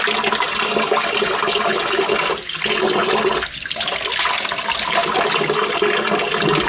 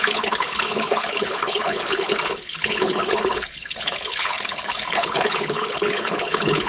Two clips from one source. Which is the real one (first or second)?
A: first